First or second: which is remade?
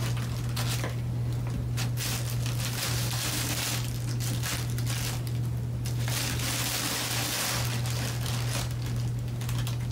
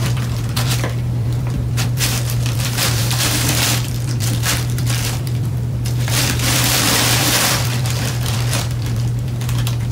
second